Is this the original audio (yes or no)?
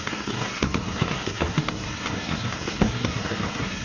no